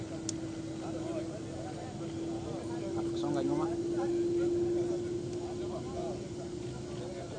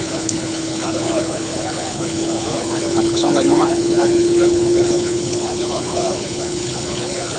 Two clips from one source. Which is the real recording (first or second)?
first